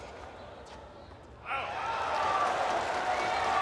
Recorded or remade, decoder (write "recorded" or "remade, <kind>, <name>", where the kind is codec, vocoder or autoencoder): recorded